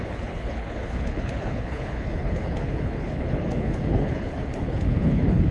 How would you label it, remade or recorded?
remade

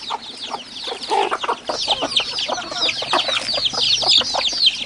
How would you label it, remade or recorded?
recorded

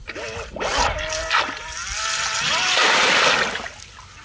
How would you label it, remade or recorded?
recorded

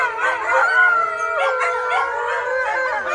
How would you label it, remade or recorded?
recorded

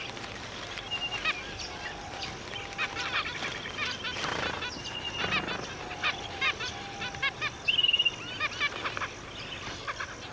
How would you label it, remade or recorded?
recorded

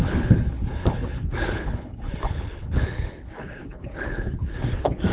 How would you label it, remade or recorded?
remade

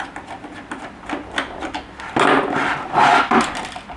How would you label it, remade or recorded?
recorded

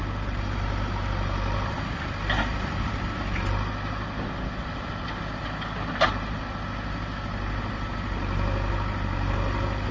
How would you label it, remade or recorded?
recorded